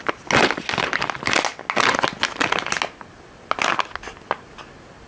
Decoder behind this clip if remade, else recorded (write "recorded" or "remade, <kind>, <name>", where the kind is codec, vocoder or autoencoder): recorded